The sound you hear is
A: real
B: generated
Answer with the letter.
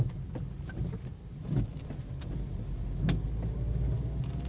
A